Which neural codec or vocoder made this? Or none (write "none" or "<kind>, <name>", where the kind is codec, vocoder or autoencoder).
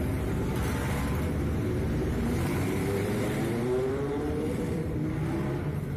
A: vocoder, BigVGAN v2